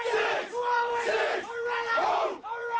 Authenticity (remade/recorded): remade